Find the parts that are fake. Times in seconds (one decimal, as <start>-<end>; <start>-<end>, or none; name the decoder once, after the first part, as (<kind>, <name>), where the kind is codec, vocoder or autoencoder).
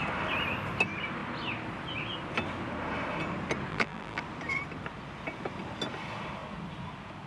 3.7-4.2 (vocoder, BigVGAN v2)